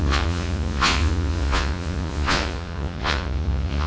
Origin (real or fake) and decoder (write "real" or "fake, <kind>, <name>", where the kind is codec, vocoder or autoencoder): fake, vocoder, Vocos